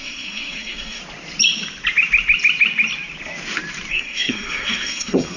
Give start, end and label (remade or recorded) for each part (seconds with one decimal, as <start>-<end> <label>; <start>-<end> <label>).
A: 0.0-1.0 remade; 1.0-3.9 recorded; 3.9-5.4 remade

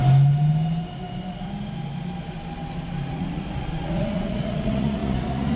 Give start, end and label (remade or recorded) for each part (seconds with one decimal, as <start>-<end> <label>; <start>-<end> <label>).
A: 0.0-3.1 recorded; 3.1-5.6 remade

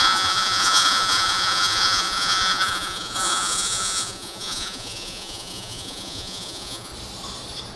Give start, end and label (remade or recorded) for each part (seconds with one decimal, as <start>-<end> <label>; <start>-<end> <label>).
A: 0.0-6.9 remade; 6.9-7.8 recorded

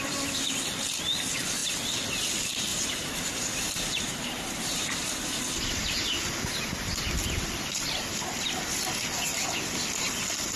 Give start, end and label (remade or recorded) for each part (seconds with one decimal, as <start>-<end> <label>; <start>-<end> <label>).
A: 0.0-2.7 recorded; 2.7-5.4 remade; 5.4-10.6 recorded

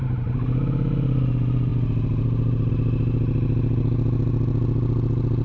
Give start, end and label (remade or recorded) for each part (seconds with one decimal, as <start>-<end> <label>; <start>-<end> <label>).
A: 0.0-5.4 recorded

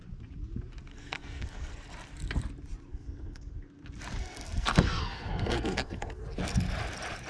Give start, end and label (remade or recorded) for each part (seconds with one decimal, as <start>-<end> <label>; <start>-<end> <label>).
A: 0.0-0.9 recorded; 0.9-1.8 remade; 1.8-2.9 recorded; 2.9-3.5 remade; 3.5-4.2 recorded; 4.2-6.2 remade; 6.2-7.3 recorded

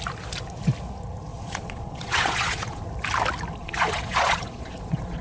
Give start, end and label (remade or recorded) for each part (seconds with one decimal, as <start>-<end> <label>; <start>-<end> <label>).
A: 0.0-1.3 recorded; 1.3-2.8 remade; 2.8-3.6 recorded; 3.6-5.2 remade